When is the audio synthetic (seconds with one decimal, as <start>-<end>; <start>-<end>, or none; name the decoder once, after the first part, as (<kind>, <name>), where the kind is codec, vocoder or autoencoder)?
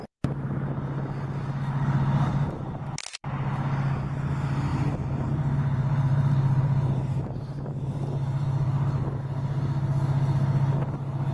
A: 2.3-3.5 (vocoder, BigVGAN v2); 4.7-9.2